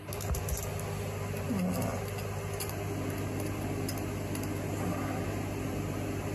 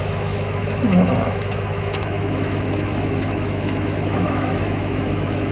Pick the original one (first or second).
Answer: first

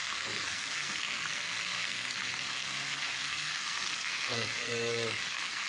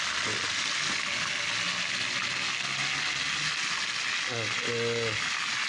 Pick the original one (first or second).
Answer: second